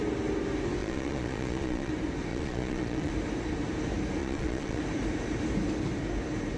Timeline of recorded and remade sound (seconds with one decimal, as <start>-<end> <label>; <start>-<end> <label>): 0.0-0.8 recorded; 0.8-1.9 remade; 1.9-2.3 recorded; 2.3-3.1 remade; 3.1-4.2 recorded; 4.2-4.8 remade; 4.8-6.6 recorded